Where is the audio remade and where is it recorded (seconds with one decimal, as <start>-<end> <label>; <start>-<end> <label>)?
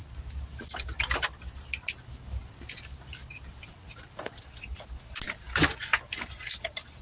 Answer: 0.0-7.0 recorded